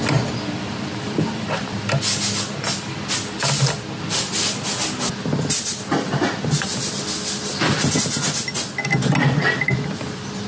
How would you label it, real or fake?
real